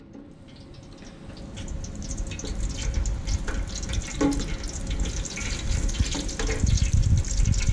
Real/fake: real